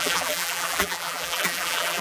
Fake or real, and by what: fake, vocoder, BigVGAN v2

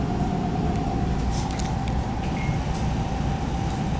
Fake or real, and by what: real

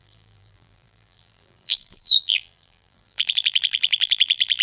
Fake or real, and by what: fake, vocoder, BigVGAN v2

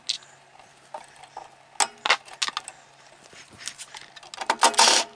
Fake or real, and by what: real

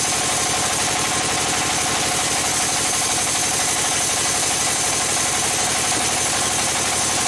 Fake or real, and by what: real